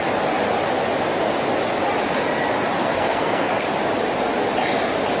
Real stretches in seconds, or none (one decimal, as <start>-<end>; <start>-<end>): 0.0-2.8; 3.5-5.2